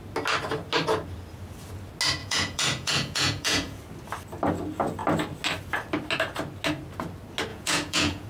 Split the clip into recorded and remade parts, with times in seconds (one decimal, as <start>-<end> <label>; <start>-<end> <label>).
0.0-2.2 recorded; 2.2-3.8 remade; 3.8-7.5 recorded; 7.5-8.3 remade